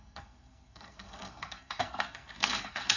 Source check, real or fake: fake